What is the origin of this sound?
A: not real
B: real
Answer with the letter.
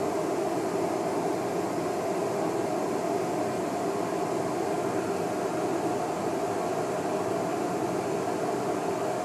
B